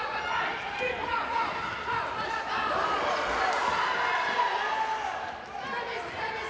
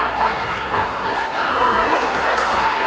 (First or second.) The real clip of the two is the first